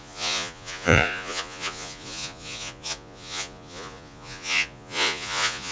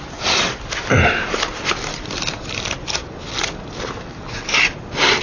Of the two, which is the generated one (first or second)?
first